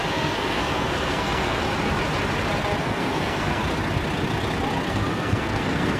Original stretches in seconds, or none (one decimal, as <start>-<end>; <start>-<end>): 1.6-2.8; 3.6-4.9